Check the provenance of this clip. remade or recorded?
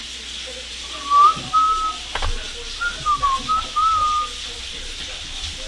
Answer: recorded